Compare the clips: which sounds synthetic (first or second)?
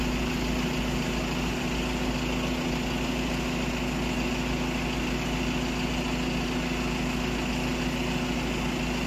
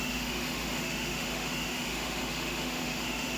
second